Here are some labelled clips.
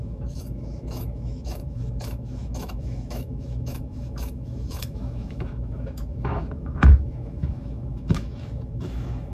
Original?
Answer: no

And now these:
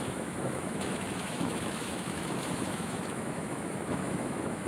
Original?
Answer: no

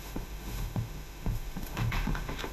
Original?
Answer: no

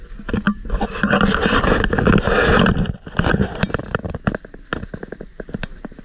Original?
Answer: yes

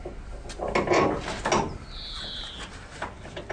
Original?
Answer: yes